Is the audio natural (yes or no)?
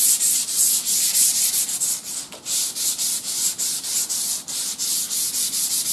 yes